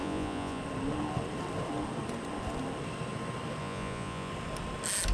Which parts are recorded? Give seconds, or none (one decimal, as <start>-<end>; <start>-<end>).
0.6-3.6; 4.3-5.1